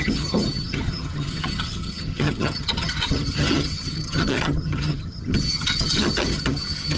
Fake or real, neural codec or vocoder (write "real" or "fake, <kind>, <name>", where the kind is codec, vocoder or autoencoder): fake, vocoder, HiFi-GAN